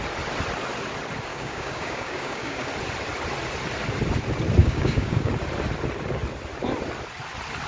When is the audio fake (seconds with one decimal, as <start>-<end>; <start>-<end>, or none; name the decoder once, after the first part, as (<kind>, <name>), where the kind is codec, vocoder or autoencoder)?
1.3-2.7 (codec, DAC); 4.6-5.3